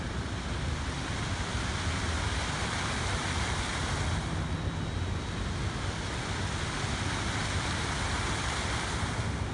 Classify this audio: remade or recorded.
recorded